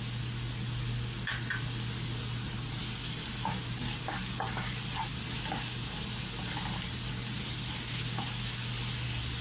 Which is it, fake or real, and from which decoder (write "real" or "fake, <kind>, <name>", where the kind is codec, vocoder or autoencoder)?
real